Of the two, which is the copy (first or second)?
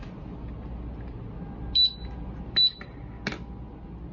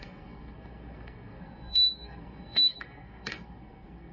second